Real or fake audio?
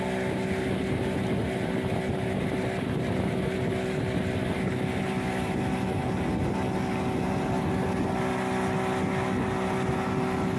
real